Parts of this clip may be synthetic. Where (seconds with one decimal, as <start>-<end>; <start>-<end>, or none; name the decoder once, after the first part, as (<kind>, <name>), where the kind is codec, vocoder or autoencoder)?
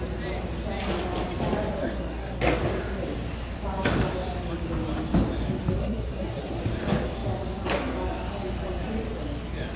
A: 1.8-2.6 (codec, SNAC); 5.8-6.6